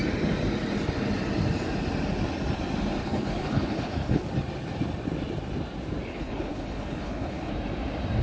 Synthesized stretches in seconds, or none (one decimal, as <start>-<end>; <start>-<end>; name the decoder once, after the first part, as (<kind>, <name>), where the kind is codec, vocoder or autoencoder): 3.0-4.3 (codec, HILCodec); 6.1-7.5